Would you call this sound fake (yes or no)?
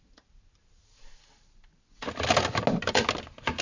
no